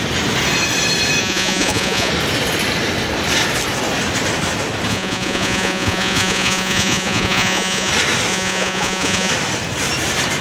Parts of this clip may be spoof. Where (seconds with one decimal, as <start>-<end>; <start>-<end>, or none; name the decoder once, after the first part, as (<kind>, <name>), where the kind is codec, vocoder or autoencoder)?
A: 1.2-2.1 (vocoder, Vocos); 4.9-7.9; 8.3-9.3